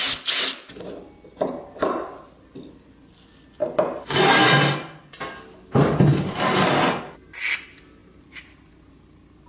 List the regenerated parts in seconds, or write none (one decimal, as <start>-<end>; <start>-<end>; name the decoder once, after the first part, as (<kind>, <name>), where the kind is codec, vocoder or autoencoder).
8.0-8.7 (vocoder, BigVGAN v2)